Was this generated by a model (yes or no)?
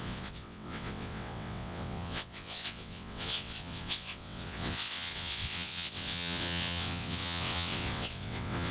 yes